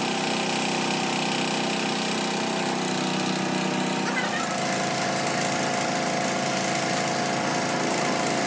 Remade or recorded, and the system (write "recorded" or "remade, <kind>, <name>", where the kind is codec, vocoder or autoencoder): recorded